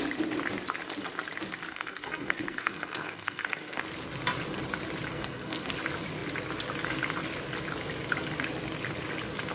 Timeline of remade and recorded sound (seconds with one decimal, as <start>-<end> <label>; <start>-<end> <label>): 0.0-1.7 recorded; 1.7-3.8 remade; 3.8-5.1 recorded; 5.1-5.7 remade; 5.7-9.5 recorded